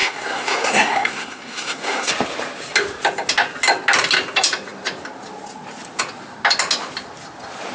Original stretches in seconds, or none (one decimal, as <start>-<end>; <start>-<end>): 2.1-7.7